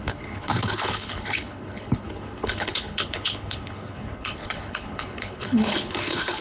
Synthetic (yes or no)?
yes